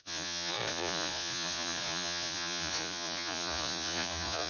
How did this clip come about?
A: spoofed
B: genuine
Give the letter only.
A